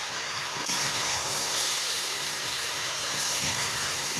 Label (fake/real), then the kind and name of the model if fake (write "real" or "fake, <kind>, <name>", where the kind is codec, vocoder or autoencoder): fake, codec, SNAC